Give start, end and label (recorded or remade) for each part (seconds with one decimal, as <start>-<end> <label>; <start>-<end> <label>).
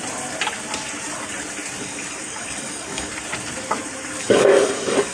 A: 0.0-1.8 recorded; 1.8-3.1 remade; 3.1-4.2 recorded; 4.2-5.1 remade